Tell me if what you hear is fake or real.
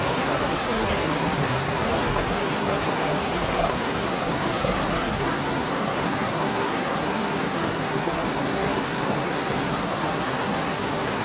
fake